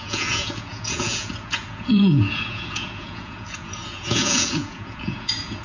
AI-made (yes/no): yes